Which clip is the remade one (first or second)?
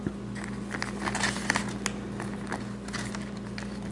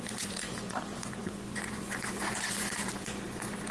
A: second